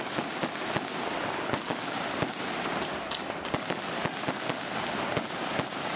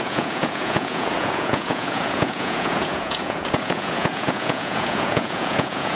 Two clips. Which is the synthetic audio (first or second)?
second